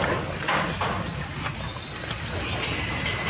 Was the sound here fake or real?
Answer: real